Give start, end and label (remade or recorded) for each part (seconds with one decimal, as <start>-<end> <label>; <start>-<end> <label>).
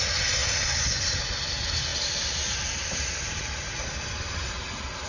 0.0-5.1 recorded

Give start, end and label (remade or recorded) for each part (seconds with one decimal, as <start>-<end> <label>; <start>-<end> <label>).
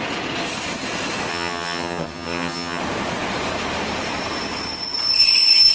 0.0-1.3 recorded; 1.3-2.8 remade; 2.8-5.7 recorded